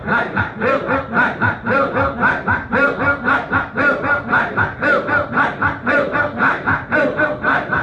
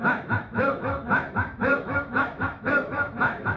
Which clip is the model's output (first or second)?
second